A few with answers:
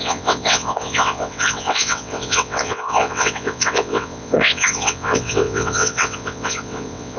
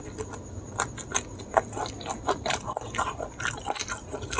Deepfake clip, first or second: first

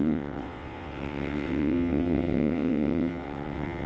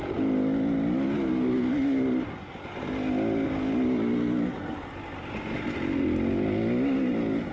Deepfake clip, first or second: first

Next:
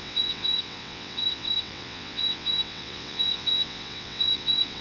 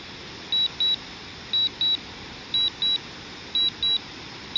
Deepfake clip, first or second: first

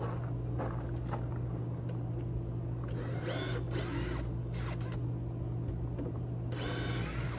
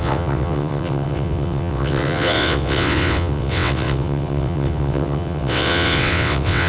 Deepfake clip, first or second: second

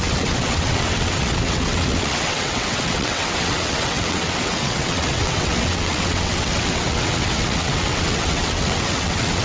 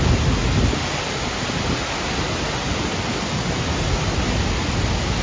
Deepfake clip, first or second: first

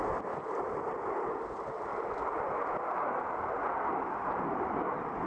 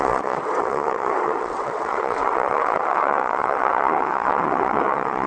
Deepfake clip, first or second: second